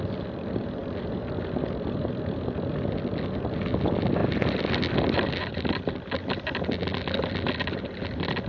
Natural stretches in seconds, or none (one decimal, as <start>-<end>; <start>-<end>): 0.0-8.5